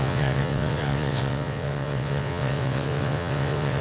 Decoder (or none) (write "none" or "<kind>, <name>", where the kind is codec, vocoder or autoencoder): vocoder, WaveNeXt